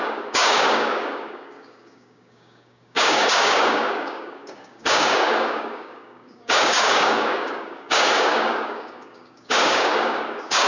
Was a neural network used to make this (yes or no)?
yes